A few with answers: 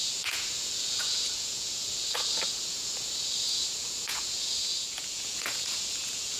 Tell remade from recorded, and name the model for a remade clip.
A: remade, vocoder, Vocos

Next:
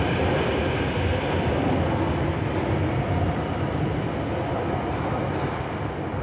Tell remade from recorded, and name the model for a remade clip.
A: recorded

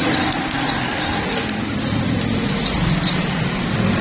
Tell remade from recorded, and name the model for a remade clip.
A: recorded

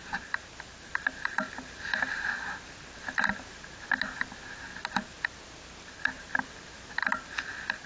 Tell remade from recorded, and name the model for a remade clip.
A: recorded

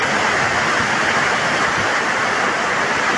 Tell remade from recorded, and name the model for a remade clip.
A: recorded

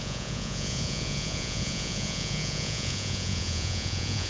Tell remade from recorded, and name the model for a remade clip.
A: remade, vocoder, Vocos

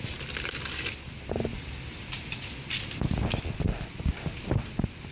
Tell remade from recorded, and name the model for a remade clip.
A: recorded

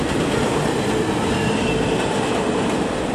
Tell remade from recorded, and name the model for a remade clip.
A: recorded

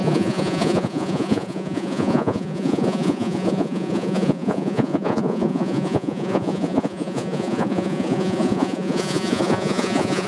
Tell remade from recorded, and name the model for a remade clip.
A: remade, vocoder, Vocos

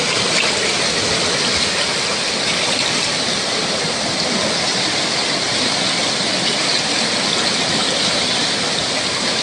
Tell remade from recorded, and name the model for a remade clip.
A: recorded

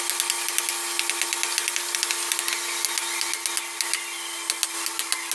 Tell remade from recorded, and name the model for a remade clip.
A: recorded